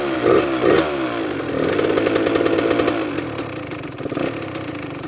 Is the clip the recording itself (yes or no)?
yes